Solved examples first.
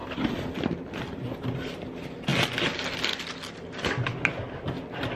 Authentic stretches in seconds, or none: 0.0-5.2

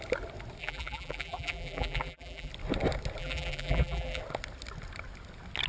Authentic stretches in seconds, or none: 0.0-0.6; 2.5-3.2; 4.2-5.7

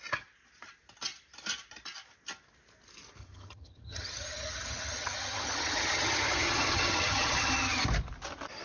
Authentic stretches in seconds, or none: 0.0-3.2; 7.8-8.6